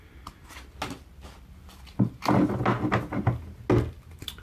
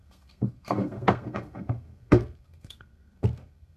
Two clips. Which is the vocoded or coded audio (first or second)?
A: second